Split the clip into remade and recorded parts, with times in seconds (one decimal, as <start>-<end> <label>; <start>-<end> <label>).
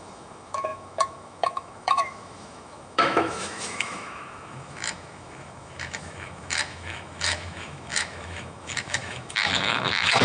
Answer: 0.0-10.2 remade